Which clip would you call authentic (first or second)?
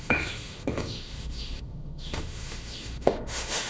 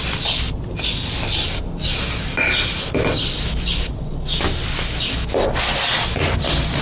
second